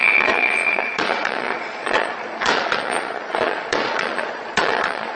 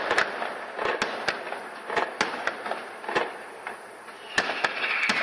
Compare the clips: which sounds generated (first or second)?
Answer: first